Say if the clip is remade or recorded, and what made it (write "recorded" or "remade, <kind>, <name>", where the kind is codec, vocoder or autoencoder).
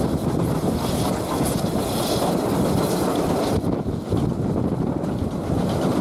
recorded